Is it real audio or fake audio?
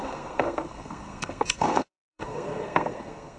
fake